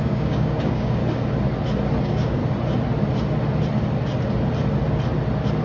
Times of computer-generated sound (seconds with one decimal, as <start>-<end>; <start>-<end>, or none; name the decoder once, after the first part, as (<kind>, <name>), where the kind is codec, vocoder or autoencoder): 0.0-1.0 (codec, DAC); 2.0-2.4